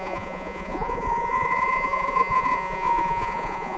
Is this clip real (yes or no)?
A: no